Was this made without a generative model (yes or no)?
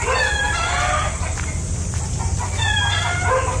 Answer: yes